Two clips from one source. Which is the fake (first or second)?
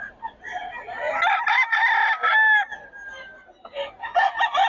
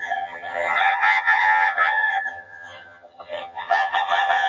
second